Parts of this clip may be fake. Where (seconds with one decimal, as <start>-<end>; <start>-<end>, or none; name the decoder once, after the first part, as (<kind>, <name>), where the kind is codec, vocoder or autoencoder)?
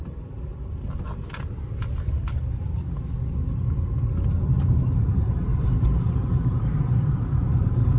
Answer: 0.0-0.5 (vocoder, BigVGAN v2); 5.0-8.0